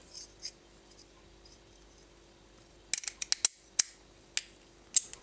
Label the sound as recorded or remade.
recorded